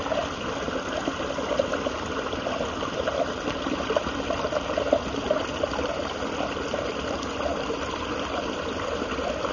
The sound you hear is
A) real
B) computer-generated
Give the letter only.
B